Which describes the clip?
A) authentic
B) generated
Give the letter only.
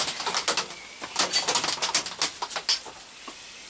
A